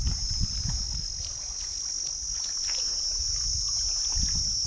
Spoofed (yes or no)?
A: no